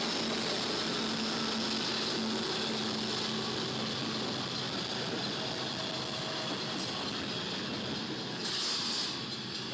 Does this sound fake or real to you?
real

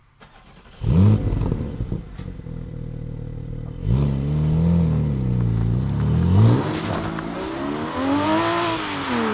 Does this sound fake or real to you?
real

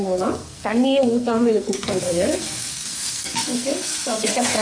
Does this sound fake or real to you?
fake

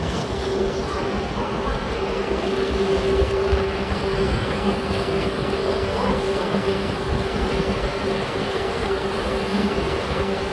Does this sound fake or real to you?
fake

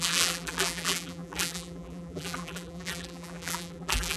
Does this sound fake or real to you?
fake